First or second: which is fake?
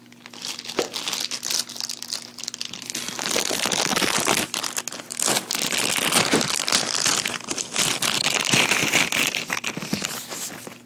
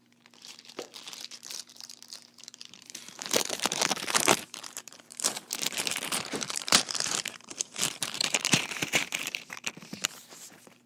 second